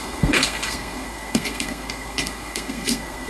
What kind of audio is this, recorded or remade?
remade